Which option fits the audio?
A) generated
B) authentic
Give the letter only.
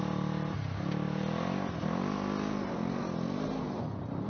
B